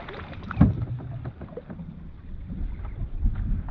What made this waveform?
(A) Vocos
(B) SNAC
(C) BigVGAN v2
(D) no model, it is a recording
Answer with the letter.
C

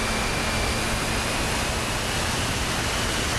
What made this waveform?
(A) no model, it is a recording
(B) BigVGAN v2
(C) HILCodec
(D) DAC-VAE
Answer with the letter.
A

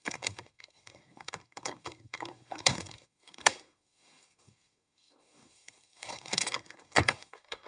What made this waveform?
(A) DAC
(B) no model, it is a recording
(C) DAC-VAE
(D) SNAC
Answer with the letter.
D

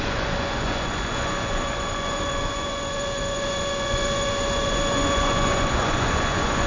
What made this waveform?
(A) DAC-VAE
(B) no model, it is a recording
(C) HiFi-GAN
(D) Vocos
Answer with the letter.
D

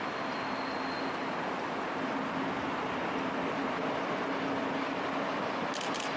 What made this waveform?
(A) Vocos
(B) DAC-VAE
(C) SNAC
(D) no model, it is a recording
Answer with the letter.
D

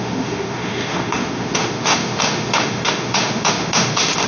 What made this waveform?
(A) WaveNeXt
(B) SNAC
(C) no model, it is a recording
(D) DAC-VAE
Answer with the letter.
D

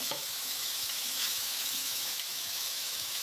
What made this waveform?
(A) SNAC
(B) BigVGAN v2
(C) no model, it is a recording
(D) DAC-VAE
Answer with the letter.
D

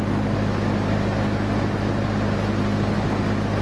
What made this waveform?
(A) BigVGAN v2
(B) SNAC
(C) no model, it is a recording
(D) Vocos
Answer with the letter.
C